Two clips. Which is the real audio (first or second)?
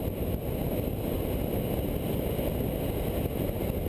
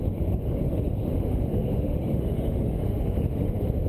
first